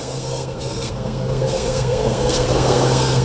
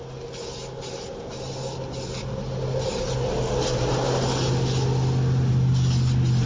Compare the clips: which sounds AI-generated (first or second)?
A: first